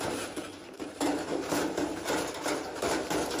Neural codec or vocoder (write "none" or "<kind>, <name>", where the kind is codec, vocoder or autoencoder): vocoder, BigVGAN v2